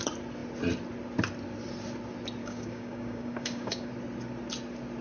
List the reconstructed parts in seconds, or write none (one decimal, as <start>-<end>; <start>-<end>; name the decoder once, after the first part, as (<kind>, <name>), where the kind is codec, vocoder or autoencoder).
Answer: 2.4-3.9 (codec, DAC)